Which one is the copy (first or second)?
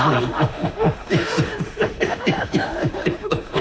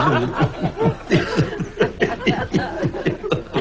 first